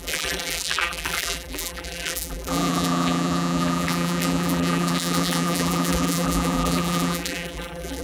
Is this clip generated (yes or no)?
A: yes